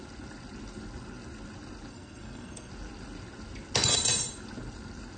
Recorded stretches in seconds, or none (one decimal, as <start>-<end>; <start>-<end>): 0.0-1.9; 2.7-5.2